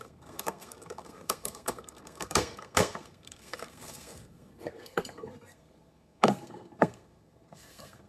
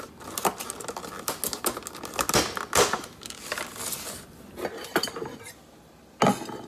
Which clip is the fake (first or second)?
first